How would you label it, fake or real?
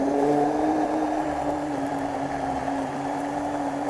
fake